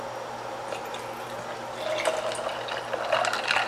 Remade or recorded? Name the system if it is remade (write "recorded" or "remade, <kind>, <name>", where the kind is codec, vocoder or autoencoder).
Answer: recorded